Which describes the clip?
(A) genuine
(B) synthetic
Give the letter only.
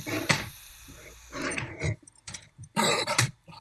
B